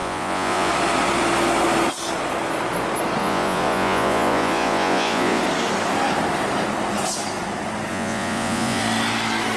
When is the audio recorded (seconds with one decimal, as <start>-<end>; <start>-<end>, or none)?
0.7-3.2; 5.4-7.9; 8.8-9.6